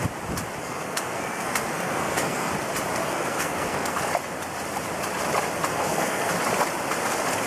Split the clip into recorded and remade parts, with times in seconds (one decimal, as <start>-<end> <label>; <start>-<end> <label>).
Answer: 0.0-0.6 recorded; 0.6-2.5 remade; 2.5-3.0 recorded; 3.0-4.0 remade; 4.0-5.7 recorded; 5.7-6.3 remade; 6.3-7.5 recorded